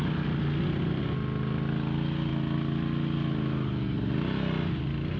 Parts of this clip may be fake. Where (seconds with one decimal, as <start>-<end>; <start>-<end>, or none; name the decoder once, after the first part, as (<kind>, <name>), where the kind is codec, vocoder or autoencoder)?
none